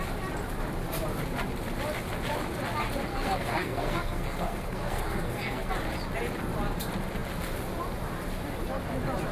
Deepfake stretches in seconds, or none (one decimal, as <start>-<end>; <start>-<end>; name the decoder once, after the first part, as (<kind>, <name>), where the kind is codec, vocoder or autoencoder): 3.1-5.7 (codec, SNAC)